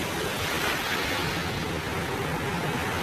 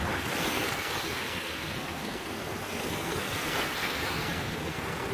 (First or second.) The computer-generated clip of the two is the second